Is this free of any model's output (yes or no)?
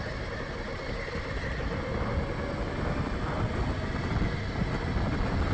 yes